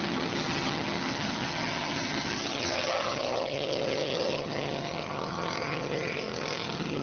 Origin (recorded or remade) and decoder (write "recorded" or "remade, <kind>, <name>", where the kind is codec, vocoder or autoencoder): remade, vocoder, HiFi-GAN